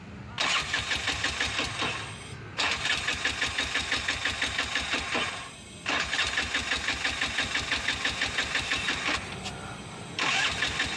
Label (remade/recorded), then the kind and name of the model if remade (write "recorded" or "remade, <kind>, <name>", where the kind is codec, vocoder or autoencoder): recorded